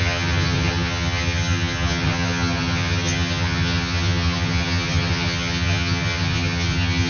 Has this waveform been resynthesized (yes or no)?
yes